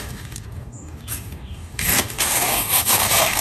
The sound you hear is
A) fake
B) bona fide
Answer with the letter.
A